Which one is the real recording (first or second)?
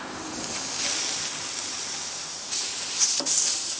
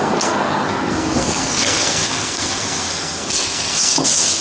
first